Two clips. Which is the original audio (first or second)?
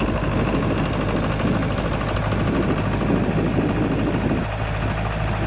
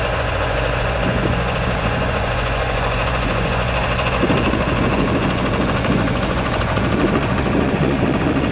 first